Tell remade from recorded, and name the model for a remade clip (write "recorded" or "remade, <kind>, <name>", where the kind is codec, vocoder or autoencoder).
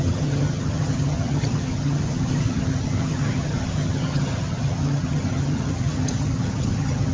remade, vocoder, HiFi-GAN